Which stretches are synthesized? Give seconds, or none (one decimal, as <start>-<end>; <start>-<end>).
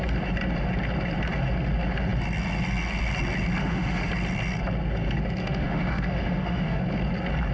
3.6-4.1; 5.4-6.8